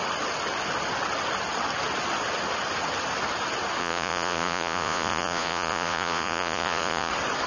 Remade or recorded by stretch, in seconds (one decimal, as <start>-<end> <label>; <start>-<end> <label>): 0.0-3.8 recorded; 3.8-7.1 remade; 7.1-7.5 recorded